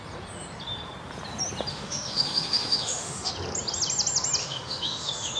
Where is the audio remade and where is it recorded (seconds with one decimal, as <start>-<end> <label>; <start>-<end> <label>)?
0.0-1.7 recorded; 1.7-3.3 remade; 3.3-4.4 recorded; 4.4-5.4 remade